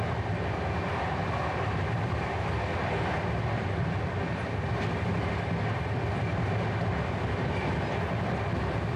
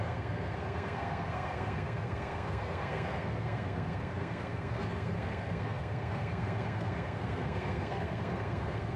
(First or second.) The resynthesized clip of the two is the second